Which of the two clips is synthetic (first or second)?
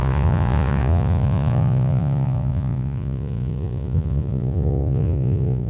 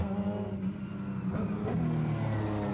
first